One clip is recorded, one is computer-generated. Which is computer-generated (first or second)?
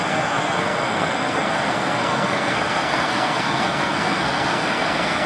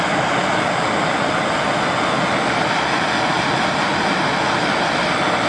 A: first